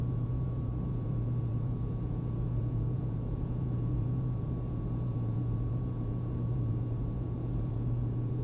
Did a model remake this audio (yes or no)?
yes